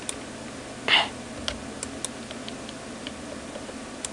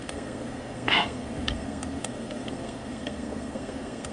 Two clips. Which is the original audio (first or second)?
first